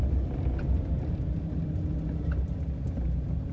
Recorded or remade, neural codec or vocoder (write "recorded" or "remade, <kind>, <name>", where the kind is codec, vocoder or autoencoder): recorded